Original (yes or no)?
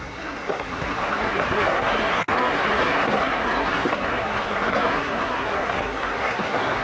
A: no